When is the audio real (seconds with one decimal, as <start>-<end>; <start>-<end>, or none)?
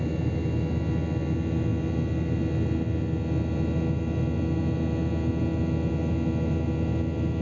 0.0-7.4